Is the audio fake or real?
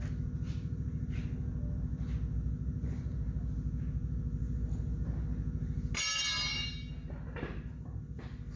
real